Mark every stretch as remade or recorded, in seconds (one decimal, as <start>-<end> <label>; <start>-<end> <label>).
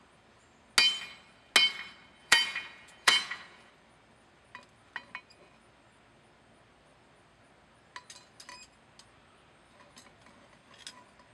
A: 0.0-2.2 recorded; 2.2-3.7 remade; 3.7-11.3 recorded